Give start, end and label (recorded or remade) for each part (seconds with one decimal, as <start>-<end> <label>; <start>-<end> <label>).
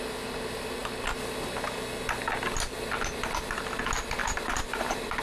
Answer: 0.0-4.2 recorded; 4.2-5.2 remade